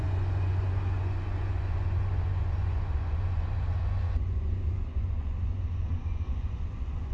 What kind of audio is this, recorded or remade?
remade